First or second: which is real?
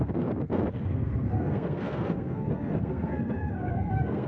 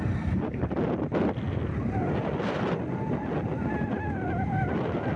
second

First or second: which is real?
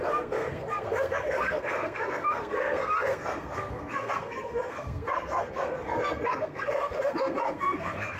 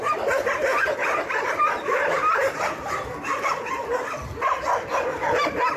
second